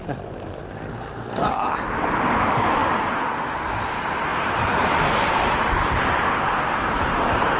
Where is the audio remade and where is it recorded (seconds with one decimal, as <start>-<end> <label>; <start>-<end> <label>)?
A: 0.0-0.6 remade; 0.6-2.0 recorded; 2.0-7.6 remade